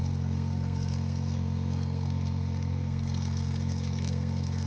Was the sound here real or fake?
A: fake